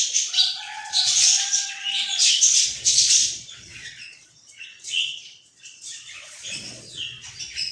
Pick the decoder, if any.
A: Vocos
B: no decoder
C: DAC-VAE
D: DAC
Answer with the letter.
A